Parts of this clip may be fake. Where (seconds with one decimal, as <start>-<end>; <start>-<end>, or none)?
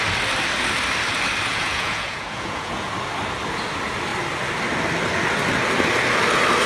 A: 1.5-2.9